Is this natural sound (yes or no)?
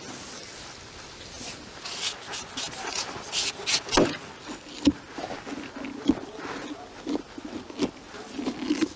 yes